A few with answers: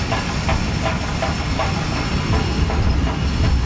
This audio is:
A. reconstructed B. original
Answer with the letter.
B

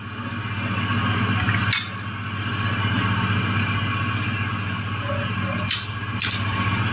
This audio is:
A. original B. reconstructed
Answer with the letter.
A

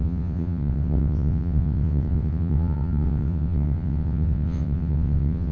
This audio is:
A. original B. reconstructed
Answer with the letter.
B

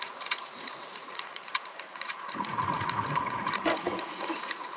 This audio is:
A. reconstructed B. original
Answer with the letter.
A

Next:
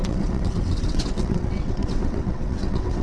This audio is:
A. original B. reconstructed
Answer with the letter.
B